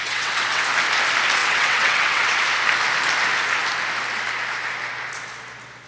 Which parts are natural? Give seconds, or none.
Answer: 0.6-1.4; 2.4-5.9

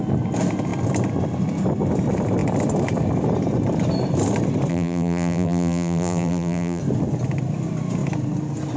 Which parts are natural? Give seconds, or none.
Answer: 0.0-4.7; 6.8-8.8

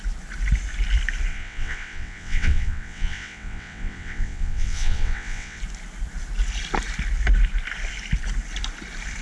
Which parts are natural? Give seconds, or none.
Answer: 0.0-1.3; 5.6-9.2

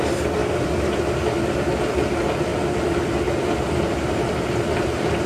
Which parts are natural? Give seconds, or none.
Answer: 0.0-5.3

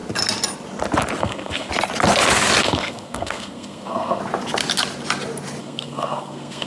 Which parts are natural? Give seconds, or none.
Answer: 0.0-1.2; 1.7-2.6; 4.2-5.6

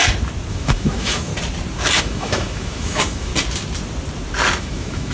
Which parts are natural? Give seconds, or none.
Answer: 0.0-0.5; 1.3-2.0; 3.3-4.6

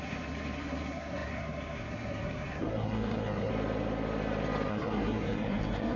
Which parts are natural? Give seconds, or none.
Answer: 3.5-4.7